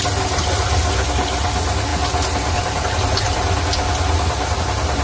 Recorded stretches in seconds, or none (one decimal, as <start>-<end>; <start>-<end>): 0.0-5.0